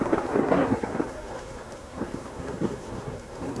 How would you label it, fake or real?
fake